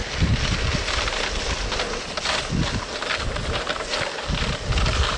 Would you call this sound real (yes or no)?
yes